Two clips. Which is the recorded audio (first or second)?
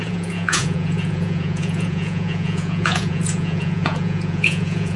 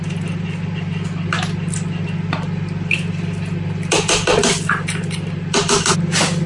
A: second